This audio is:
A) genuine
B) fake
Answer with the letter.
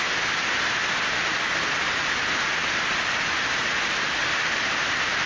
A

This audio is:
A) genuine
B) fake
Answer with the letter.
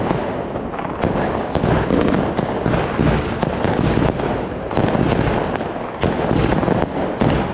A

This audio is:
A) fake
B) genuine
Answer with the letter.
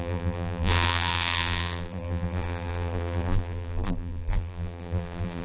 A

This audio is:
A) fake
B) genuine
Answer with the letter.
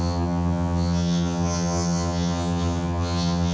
A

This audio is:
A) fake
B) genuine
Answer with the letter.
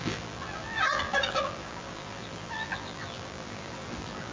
A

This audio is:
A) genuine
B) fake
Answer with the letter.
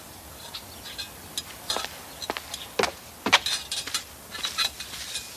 A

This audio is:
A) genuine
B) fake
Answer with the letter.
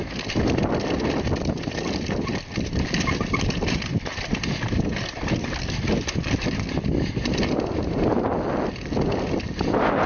B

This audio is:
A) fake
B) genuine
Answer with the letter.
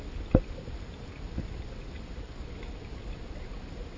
B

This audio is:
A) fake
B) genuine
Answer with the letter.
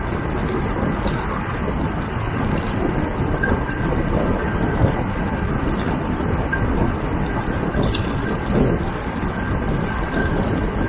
B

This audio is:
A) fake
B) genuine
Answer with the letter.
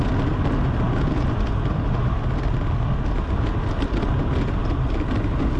B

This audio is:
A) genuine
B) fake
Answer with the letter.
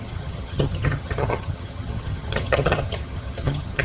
B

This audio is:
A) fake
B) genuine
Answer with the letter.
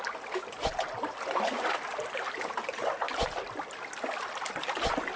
B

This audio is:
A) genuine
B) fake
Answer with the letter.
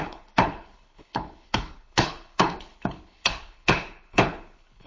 B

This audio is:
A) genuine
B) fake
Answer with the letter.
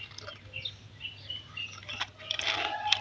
A